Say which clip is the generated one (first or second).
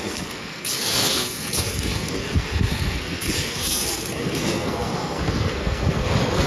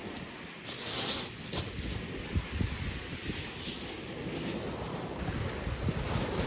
first